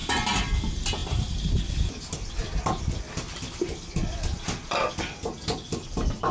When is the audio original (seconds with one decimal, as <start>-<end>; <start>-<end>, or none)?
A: 0.0-1.0; 1.9-6.3